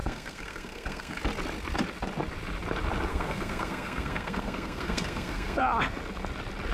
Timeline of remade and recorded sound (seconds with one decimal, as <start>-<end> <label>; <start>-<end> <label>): 0.0-1.2 remade; 1.2-3.1 recorded; 3.1-5.6 remade; 5.6-6.7 recorded